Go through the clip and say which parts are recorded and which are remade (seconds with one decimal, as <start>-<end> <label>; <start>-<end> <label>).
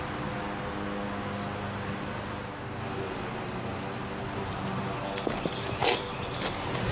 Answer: 0.0-6.9 recorded